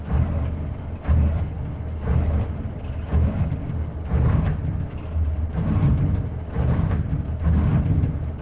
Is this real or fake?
real